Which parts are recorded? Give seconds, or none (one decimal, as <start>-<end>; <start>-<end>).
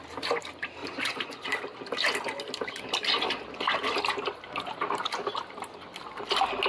0.0-0.8; 1.5-6.7